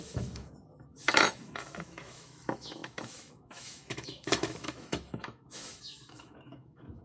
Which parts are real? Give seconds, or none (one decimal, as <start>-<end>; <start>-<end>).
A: none